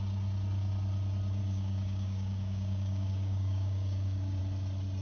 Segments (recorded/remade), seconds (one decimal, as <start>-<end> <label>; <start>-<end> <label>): 0.0-1.4 recorded; 1.4-4.4 remade; 4.4-5.0 recorded